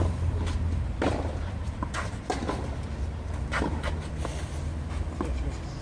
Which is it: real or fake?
real